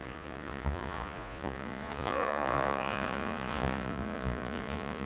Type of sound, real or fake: fake